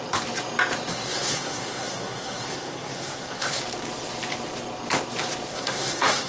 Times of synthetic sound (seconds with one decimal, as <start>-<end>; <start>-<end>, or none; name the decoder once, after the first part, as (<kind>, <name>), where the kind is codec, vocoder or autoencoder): 0.9-3.6 (codec, SNAC); 5.5-6.3